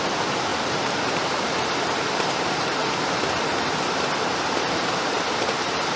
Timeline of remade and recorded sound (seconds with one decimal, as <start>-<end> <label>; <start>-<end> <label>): 0.0-2.8 remade; 2.8-3.9 recorded; 3.9-6.0 remade